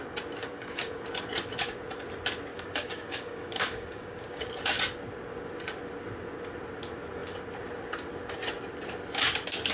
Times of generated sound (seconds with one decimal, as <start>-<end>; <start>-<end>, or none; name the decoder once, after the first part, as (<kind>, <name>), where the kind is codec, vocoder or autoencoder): 0.4-0.9 (codec, DAC); 2.5-4.5